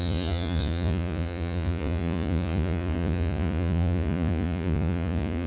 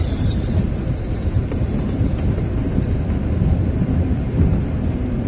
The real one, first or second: second